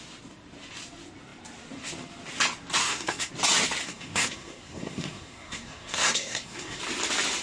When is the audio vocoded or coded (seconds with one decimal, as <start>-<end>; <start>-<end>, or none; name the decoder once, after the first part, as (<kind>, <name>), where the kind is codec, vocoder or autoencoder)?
2.8-3.3 (codec, SNAC); 3.8-6.8